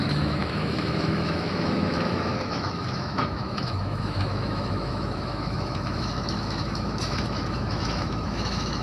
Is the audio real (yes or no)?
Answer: no